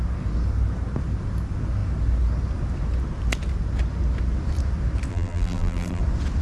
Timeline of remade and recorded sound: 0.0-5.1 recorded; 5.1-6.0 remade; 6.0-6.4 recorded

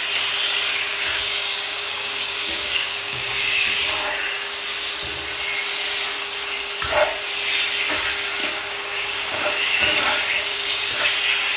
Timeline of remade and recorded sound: 0.0-0.9 recorded; 0.9-3.8 remade; 3.8-8.4 recorded; 8.4-11.1 remade; 11.1-11.6 recorded

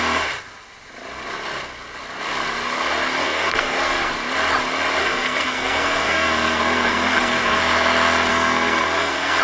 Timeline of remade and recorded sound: 0.0-3.2 recorded; 3.2-4.1 remade; 4.1-5.0 recorded; 5.0-7.6 remade; 7.6-8.3 recorded; 8.3-9.4 remade

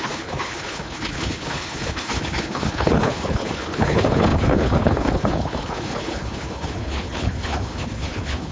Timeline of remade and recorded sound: 0.0-8.5 remade

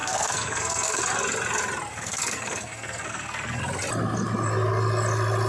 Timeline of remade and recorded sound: 0.0-1.0 remade; 1.0-1.9 recorded; 1.9-3.6 remade; 3.6-5.5 recorded

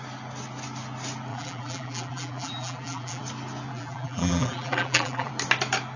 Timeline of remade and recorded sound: 0.0-1.3 recorded; 1.3-3.2 remade; 3.2-3.7 recorded; 3.7-5.3 remade; 5.3-6.0 recorded